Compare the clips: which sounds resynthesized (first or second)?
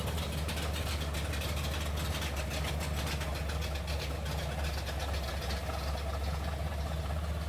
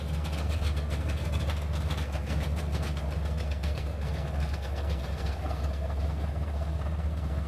second